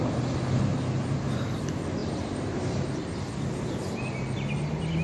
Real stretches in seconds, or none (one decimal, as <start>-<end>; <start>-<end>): 0.0-0.7; 1.6-2.0; 3.2-5.0